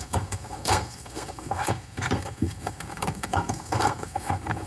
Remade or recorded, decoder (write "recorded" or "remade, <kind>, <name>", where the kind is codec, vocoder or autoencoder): remade, codec, SNAC